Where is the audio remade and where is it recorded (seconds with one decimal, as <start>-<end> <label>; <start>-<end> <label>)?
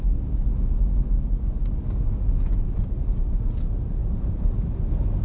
0.0-5.2 recorded